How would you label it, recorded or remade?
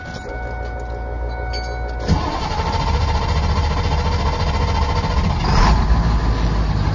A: recorded